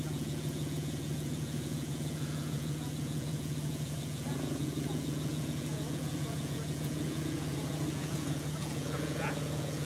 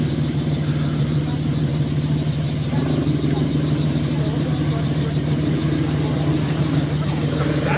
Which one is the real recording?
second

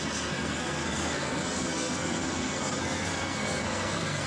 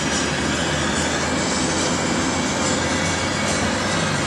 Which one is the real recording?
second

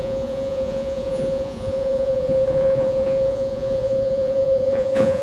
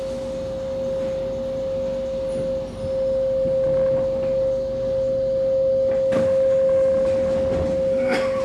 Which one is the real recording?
second